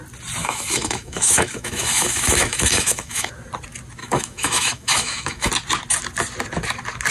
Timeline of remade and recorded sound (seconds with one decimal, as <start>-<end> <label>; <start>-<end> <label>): 0.0-0.4 recorded; 0.4-3.3 remade; 3.3-4.0 recorded; 4.0-5.5 remade; 5.5-7.1 recorded